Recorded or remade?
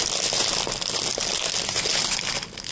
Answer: recorded